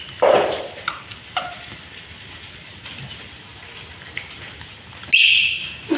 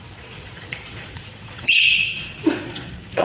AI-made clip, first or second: second